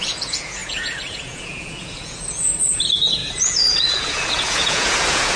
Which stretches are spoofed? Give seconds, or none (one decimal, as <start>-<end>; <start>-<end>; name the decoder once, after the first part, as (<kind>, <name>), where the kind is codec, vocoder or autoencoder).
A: 0.0-5.4 (vocoder, Vocos)